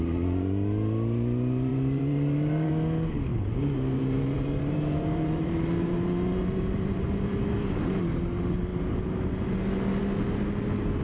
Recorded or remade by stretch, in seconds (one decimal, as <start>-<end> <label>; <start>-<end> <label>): 0.0-1.7 recorded; 1.7-2.7 remade; 2.7-3.3 recorded; 3.3-7.5 remade; 7.5-11.0 recorded